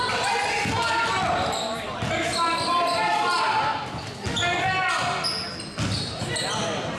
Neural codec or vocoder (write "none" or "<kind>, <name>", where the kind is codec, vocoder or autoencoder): none